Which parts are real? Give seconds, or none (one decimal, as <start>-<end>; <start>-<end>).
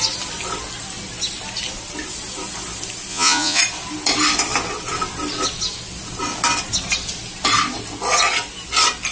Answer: 0.0-3.1; 3.6-9.1